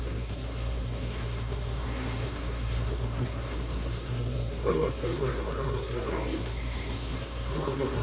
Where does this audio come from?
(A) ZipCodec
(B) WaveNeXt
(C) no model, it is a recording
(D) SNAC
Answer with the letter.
D